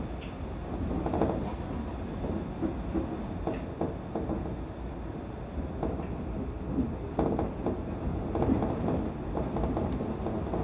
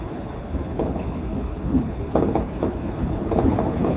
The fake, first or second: second